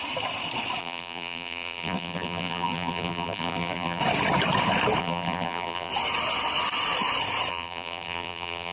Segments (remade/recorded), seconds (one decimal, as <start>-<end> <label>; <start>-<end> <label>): 0.0-0.8 recorded; 0.8-4.0 remade; 4.0-5.0 recorded; 5.0-5.9 remade; 5.9-7.5 recorded; 7.5-8.7 remade

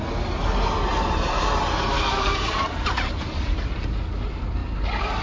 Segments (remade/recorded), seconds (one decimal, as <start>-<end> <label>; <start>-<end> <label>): 0.0-0.9 recorded; 0.9-4.0 remade; 4.0-4.6 recorded; 4.6-5.2 remade

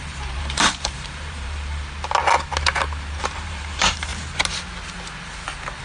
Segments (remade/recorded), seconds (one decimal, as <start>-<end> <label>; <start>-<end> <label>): 0.0-1.8 remade; 1.8-3.2 recorded; 3.2-4.1 remade; 4.1-5.8 recorded

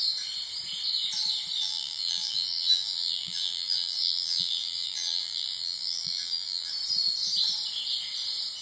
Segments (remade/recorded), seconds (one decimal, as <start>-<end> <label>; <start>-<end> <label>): 0.0-1.6 recorded; 1.6-6.7 remade; 6.7-8.6 recorded

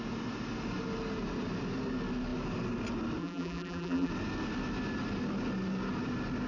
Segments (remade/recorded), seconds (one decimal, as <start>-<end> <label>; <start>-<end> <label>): 0.0-3.2 recorded; 3.2-4.1 remade; 4.1-6.5 recorded

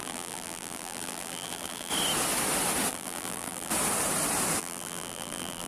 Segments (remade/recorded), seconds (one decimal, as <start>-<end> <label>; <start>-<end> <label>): 0.0-1.9 remade; 1.9-2.9 recorded; 2.9-3.7 remade; 3.7-4.6 recorded; 4.6-5.7 remade

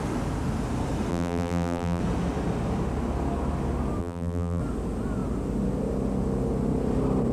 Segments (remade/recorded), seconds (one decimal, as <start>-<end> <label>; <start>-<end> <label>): 0.0-1.1 recorded; 1.1-2.0 remade; 2.0-4.0 recorded; 4.0-4.6 remade; 4.6-7.3 recorded